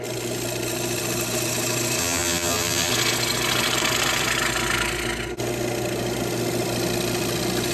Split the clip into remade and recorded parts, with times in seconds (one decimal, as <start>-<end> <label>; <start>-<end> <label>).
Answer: 0.0-2.0 recorded; 2.0-2.9 remade; 2.9-7.7 recorded